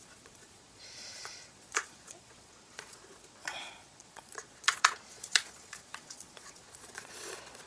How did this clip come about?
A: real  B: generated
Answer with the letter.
B